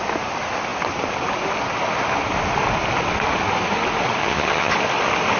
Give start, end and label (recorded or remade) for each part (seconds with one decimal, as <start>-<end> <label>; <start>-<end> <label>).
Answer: 0.0-4.2 recorded; 4.2-4.7 remade; 4.7-5.4 recorded

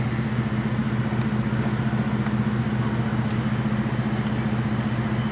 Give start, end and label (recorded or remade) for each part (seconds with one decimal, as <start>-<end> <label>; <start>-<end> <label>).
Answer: 0.0-5.3 recorded